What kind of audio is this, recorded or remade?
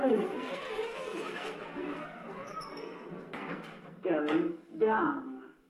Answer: remade